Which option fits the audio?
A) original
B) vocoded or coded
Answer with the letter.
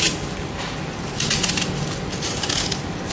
A